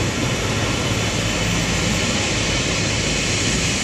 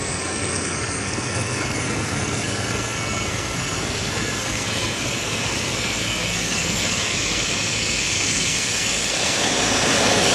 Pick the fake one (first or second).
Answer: second